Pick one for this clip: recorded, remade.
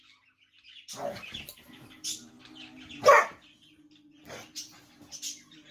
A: recorded